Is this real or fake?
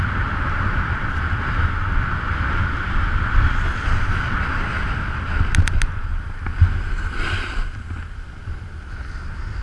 real